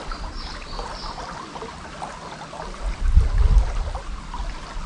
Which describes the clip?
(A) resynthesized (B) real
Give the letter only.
B